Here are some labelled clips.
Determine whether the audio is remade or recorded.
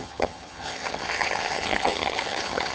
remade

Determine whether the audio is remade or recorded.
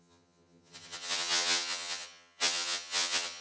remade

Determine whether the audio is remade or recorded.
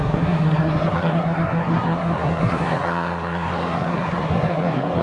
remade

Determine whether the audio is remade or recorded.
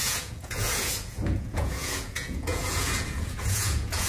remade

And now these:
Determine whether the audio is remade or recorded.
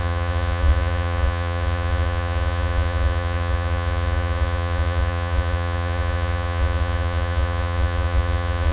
remade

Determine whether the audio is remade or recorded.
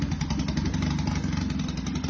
recorded